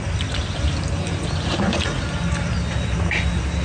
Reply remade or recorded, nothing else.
recorded